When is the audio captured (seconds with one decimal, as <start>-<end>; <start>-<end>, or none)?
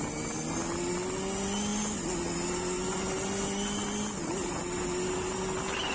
0.0-5.9